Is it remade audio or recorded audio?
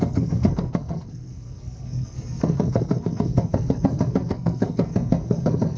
remade